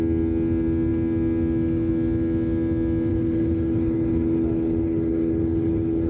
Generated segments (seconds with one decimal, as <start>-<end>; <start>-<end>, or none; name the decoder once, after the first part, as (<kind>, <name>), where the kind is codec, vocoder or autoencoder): 3.1-6.1 (codec, HILCodec)